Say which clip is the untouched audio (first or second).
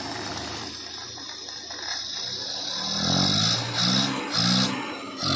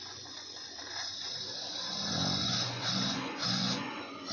first